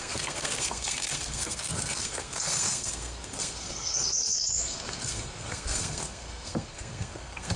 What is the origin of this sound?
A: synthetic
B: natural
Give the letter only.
A